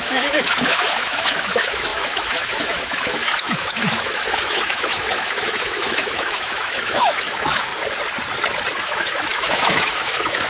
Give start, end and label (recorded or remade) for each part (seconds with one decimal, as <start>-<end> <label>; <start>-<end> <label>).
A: 0.0-7.7 remade; 7.7-8.8 recorded; 8.8-10.5 remade